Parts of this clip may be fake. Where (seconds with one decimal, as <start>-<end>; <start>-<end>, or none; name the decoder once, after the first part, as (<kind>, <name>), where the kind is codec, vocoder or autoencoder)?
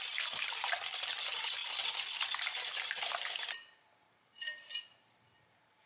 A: none